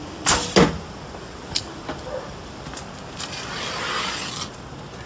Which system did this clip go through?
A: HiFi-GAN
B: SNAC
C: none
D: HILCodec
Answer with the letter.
C